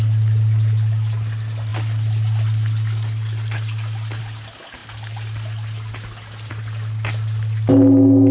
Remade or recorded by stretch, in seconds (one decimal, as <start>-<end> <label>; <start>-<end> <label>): 0.0-8.3 recorded